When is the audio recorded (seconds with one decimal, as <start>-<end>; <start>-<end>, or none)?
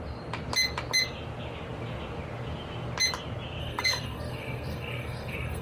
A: 0.0-3.6